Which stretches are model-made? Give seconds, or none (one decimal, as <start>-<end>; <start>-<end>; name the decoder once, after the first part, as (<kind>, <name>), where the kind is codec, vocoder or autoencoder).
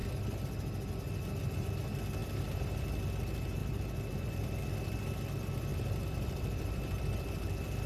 2.2-3.1 (vocoder, BigVGAN v2); 3.6-4.6; 5.7-7.9